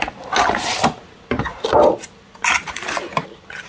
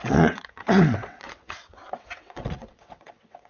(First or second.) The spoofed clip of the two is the second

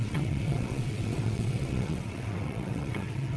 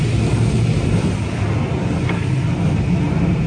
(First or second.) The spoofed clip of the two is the first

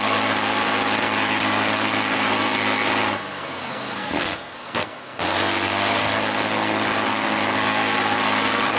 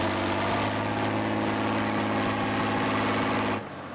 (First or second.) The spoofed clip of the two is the first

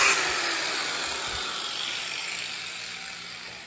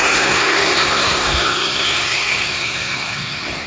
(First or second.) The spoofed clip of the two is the second